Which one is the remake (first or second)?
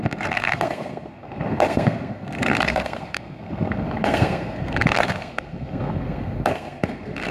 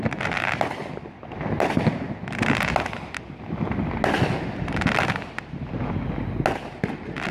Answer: first